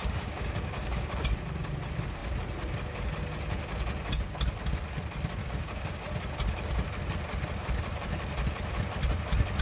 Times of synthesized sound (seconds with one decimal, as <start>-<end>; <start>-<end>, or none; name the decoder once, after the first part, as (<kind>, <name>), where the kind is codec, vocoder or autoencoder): 0.0-1.1 (codec, DAC); 5.4-6.0